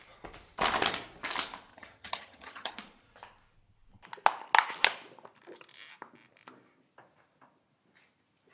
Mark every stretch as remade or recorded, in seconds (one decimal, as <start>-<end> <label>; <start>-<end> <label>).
0.0-1.7 recorded; 1.7-2.7 remade; 2.7-8.5 recorded